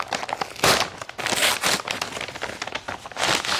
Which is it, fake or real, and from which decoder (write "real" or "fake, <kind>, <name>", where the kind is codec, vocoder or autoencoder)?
real